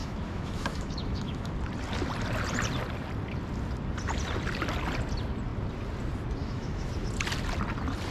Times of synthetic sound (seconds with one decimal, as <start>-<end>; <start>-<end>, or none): 0.0-1.5; 6.4-6.9